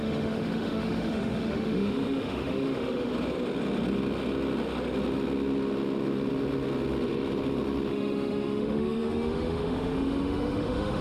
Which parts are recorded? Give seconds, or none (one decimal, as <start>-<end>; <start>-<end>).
3.1-7.9